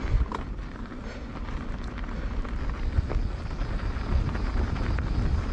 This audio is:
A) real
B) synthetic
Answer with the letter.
A